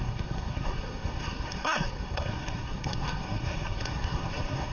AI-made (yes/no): yes